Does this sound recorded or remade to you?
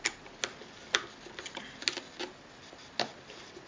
recorded